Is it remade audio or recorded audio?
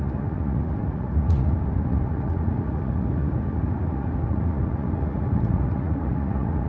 remade